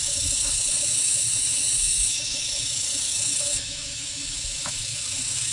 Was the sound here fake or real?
fake